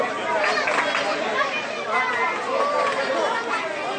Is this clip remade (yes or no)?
no